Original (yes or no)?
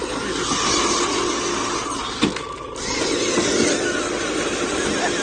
yes